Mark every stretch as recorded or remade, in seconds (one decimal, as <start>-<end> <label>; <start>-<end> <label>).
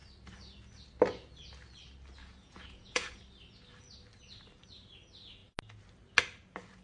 0.0-2.2 recorded; 2.2-3.2 remade; 3.2-6.8 recorded